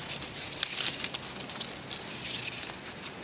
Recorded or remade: recorded